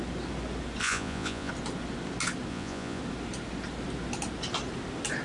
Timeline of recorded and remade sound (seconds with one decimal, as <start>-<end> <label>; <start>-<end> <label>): 0.0-0.8 recorded; 0.8-1.5 remade; 1.5-2.5 recorded; 2.5-3.0 remade; 3.0-5.2 recorded